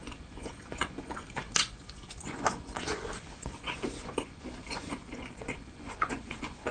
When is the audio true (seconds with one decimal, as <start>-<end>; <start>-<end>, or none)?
none